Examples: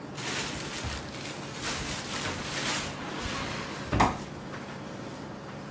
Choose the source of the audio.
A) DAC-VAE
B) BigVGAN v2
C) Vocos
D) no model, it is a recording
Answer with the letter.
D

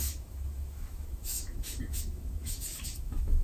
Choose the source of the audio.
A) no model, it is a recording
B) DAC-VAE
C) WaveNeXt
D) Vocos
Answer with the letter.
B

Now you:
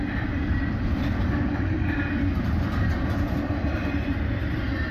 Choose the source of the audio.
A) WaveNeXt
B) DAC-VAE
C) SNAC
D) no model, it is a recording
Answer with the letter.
D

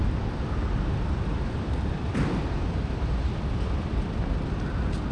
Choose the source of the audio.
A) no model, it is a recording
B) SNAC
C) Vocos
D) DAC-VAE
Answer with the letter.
A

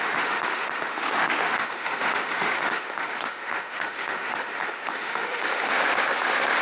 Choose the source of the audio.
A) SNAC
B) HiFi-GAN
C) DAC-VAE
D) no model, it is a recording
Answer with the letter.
C